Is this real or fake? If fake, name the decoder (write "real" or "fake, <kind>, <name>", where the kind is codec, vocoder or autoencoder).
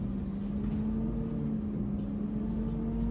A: real